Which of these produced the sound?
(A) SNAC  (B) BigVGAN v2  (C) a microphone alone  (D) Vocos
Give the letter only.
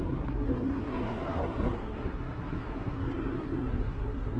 A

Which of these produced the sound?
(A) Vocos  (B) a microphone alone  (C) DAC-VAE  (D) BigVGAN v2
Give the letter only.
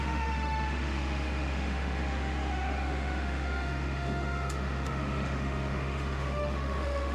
C